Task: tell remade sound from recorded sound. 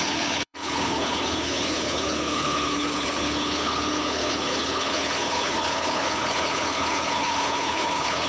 remade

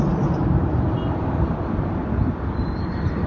recorded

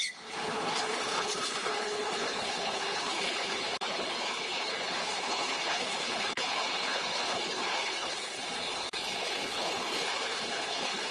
remade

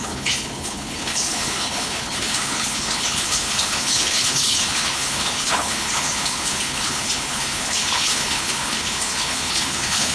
remade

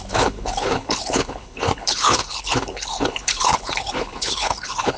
remade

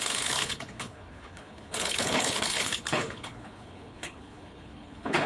remade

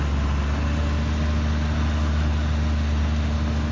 recorded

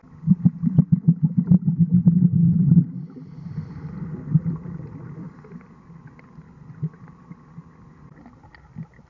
recorded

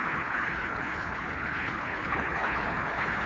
remade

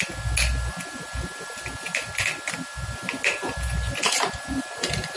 recorded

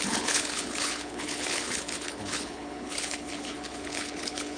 remade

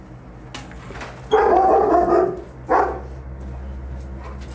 recorded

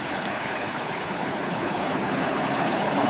remade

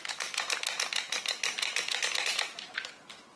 recorded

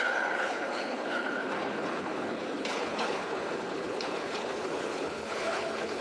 remade